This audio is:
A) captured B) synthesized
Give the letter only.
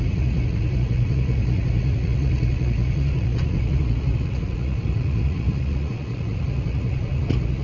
B